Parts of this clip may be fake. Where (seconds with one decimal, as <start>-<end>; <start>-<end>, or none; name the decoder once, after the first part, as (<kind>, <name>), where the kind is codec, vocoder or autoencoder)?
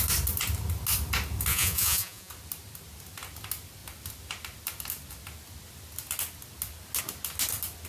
1.5-2.3 (vocoder, Vocos)